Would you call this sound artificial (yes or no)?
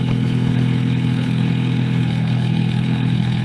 yes